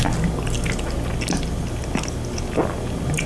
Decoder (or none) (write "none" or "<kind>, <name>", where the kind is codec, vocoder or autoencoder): none